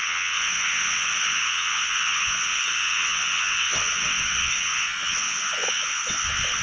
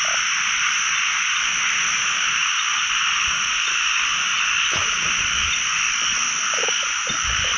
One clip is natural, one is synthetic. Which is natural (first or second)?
second